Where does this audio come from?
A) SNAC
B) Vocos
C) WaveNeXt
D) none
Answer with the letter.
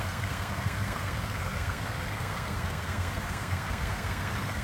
A